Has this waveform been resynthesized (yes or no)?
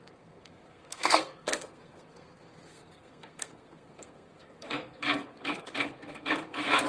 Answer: yes